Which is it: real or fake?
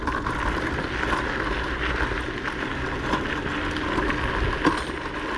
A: real